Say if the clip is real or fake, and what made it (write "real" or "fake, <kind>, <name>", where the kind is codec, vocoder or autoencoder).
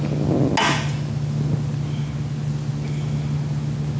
real